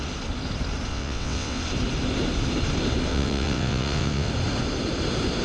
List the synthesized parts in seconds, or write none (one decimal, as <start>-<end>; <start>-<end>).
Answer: 0.9-1.6; 3.1-4.3